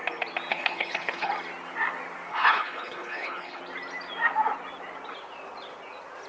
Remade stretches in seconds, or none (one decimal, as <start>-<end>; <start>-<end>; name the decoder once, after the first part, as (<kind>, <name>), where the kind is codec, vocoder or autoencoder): 0.5-1.3 (codec, HILCodec); 2.3-3.6